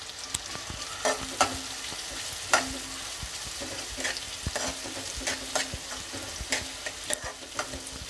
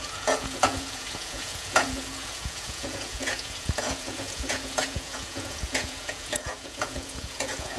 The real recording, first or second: first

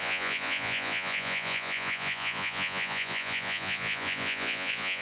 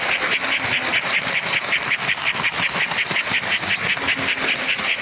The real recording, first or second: second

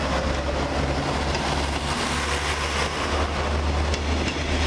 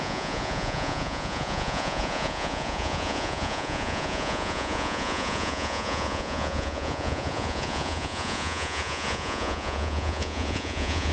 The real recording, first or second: first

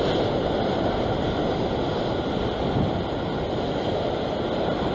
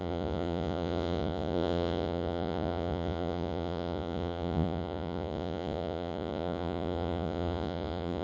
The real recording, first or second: first